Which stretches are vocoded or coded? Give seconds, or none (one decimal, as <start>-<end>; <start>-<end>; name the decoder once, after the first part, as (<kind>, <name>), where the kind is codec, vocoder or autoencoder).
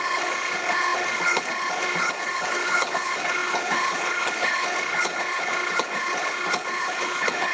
0.0-7.5 (codec, HILCodec)